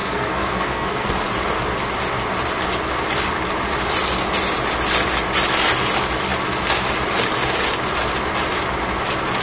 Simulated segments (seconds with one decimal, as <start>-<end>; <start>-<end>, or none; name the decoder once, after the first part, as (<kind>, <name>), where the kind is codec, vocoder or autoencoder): 0.0-1.1 (codec, SNAC)